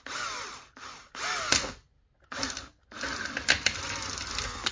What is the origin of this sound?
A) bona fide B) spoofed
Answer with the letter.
A